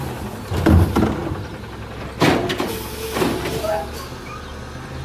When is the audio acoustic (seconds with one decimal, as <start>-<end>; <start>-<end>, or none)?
0.0-5.0